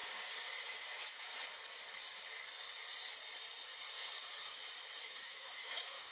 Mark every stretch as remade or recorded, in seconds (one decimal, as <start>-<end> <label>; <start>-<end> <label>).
0.0-0.6 recorded; 0.6-1.3 remade; 1.3-5.0 recorded; 5.0-6.1 remade